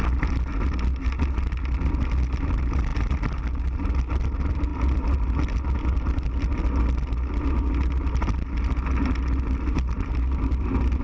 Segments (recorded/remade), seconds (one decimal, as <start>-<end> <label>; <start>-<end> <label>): 0.0-11.0 recorded